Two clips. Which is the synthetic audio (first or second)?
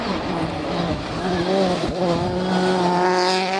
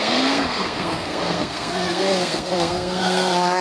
second